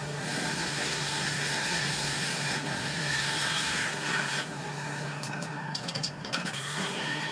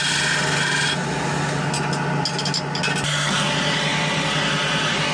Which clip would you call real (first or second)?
second